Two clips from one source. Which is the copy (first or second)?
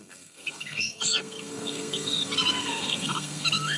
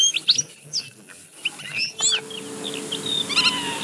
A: first